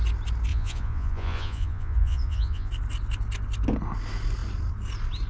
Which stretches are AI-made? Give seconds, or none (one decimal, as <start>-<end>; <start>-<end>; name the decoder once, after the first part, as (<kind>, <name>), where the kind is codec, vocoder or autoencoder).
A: 0.5-2.7 (vocoder, Vocos)